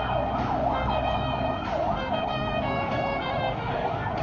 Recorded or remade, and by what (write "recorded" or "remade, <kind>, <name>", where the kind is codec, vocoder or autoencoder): remade, codec, DAC